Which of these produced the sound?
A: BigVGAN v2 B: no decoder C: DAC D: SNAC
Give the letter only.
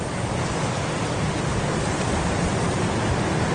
B